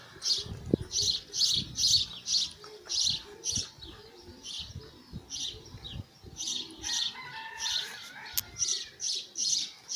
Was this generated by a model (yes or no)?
no